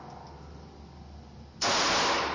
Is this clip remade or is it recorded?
recorded